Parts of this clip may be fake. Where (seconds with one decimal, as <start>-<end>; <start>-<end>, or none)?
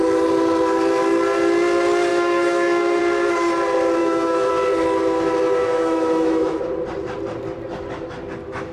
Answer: 2.1-3.0; 4.0-4.5; 5.6-6.6